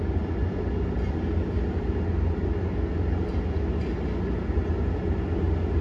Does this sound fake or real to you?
real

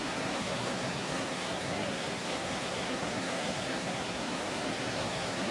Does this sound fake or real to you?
fake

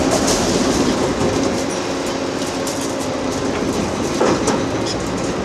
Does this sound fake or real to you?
real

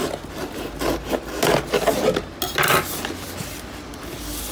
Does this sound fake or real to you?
real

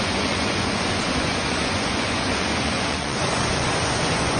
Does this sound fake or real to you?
fake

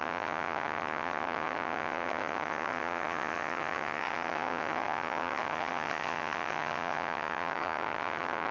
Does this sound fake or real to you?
fake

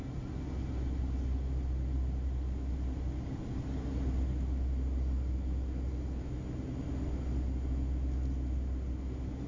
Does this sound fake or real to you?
real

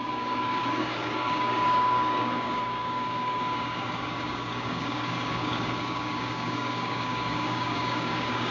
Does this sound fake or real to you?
fake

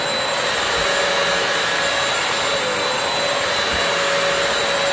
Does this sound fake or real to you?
real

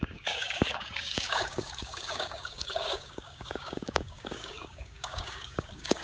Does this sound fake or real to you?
fake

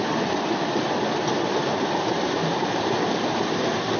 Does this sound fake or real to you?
real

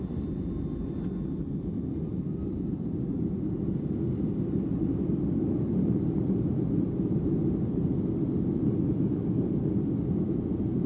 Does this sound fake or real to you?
real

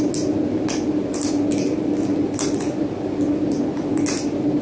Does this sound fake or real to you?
real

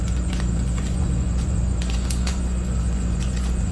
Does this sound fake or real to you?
fake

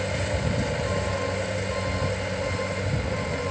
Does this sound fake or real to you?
real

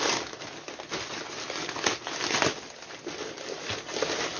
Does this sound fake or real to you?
real